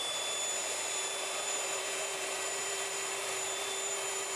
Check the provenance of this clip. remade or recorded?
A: remade